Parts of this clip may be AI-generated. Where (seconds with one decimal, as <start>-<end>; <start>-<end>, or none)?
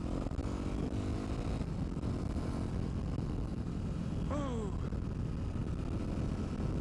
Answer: 3.5-4.1